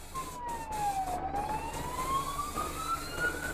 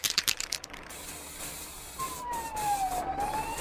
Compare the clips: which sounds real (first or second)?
first